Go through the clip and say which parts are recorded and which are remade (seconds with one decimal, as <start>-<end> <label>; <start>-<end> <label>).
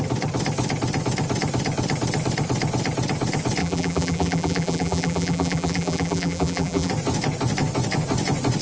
0.0-3.6 recorded; 3.6-6.9 remade; 6.9-8.6 recorded